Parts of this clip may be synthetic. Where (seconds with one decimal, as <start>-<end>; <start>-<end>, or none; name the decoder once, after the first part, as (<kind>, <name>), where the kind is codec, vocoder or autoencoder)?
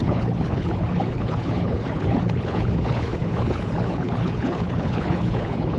0.0-5.8 (codec, HILCodec)